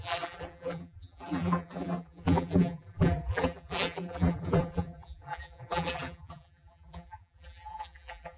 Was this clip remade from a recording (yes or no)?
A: yes